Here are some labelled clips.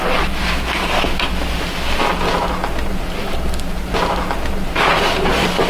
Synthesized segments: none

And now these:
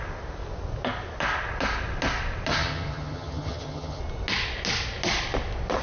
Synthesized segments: 2.5-4.0 (vocoder, HiFi-GAN)

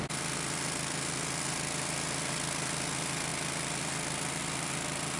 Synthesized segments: none

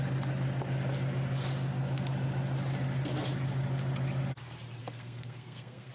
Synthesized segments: 4.8-5.9 (codec, SNAC)

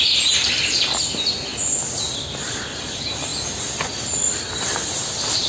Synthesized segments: none